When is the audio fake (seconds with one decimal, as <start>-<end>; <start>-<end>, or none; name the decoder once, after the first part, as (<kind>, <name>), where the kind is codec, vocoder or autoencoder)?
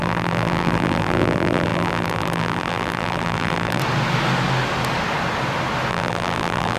0.0-3.8 (vocoder, BigVGAN v2); 5.9-6.8